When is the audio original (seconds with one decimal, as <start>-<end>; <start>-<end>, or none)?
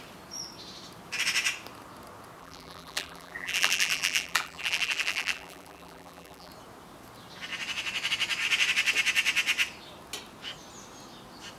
0.0-2.4; 6.5-11.6